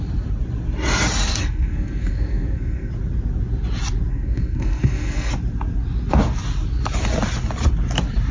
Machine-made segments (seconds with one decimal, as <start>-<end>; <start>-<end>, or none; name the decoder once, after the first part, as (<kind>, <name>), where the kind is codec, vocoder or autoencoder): 1.4-2.9 (codec, SNAC); 4.1-5.3